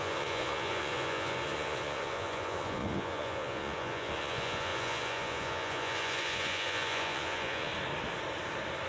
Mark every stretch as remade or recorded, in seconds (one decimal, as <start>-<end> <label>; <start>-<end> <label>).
0.0-7.7 remade; 7.7-8.9 recorded